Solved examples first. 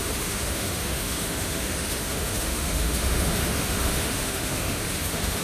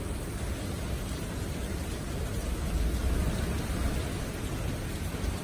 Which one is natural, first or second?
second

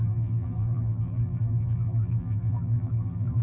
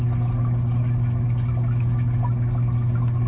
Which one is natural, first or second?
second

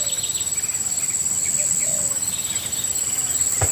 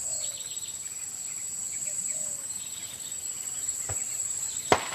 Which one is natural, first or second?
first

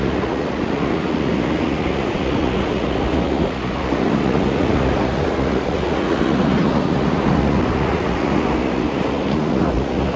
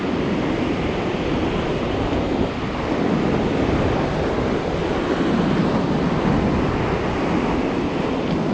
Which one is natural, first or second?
second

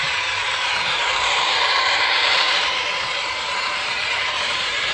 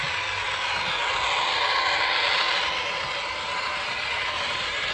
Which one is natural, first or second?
second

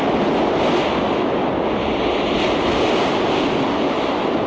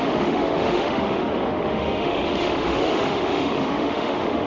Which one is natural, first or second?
first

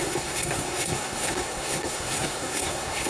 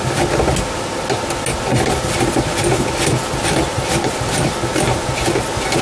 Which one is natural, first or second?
second